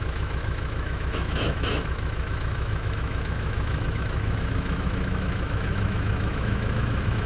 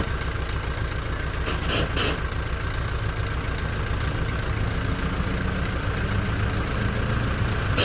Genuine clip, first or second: second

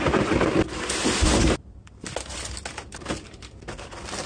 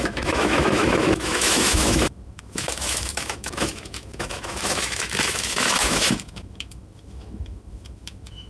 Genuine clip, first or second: first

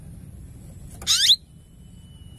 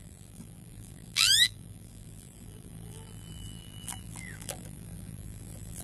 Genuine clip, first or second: first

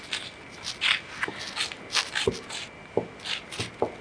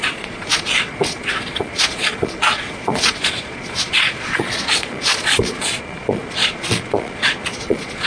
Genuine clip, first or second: first